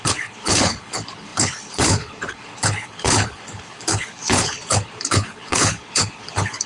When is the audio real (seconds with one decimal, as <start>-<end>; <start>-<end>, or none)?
none